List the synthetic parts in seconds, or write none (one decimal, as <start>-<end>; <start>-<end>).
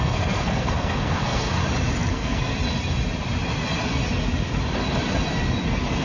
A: 0.0-1.6; 2.1-2.5